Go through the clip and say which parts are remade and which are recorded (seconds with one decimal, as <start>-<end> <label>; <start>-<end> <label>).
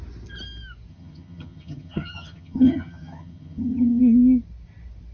0.0-0.9 recorded; 0.9-4.0 remade; 4.0-5.1 recorded